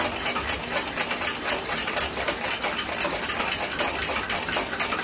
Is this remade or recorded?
recorded